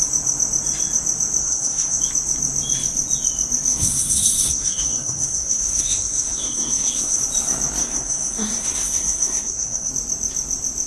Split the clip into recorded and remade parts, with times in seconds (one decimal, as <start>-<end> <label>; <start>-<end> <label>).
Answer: 0.0-1.4 recorded; 1.4-2.0 remade; 2.0-3.7 recorded; 3.7-7.2 remade; 7.2-7.8 recorded; 7.8-9.9 remade; 9.9-10.9 recorded

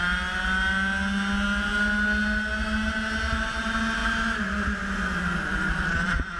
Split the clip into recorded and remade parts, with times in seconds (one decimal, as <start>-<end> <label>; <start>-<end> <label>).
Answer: 0.0-6.4 recorded

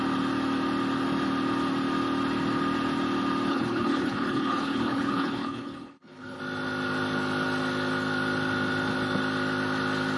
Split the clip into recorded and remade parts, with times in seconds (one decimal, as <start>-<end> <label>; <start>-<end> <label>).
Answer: 0.0-3.5 recorded; 3.5-6.4 remade; 6.4-10.2 recorded

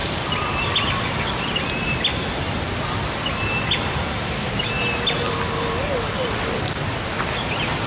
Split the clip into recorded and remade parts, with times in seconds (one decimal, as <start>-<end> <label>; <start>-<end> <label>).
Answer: 0.0-7.9 recorded

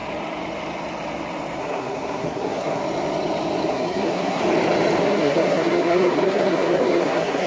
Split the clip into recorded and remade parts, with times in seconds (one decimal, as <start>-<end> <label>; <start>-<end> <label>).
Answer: 0.0-1.6 recorded; 1.6-2.8 remade; 2.8-3.7 recorded; 3.7-4.4 remade; 4.4-5.0 recorded; 5.0-7.5 remade